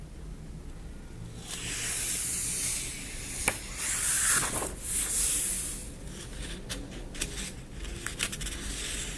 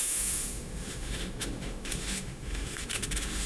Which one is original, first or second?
first